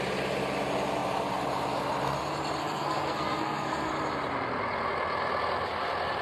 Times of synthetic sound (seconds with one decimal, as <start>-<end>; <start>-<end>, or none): 2.6-3.9